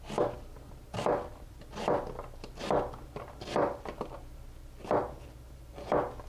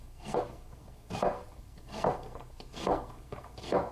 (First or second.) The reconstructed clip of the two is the second